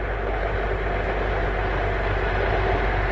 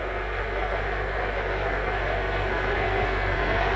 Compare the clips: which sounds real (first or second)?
first